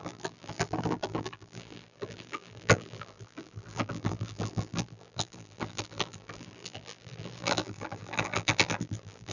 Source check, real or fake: fake